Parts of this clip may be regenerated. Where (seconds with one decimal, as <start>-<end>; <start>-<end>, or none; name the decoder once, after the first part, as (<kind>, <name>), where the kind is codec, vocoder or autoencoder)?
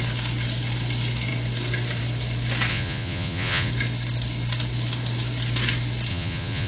2.7-3.7 (vocoder, Vocos); 6.1-6.7